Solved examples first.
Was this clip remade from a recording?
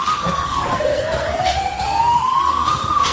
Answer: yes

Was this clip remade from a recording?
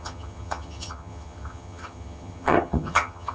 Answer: yes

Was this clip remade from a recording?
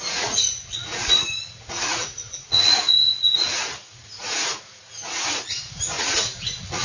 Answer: yes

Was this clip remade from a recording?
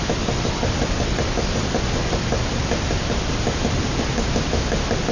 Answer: no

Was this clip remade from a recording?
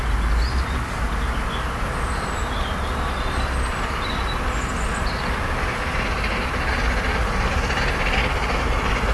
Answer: no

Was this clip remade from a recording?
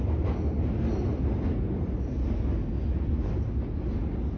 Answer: no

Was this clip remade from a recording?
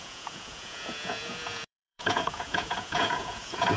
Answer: yes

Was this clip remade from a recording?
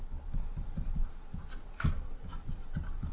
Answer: no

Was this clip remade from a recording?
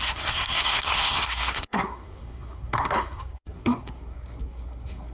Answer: yes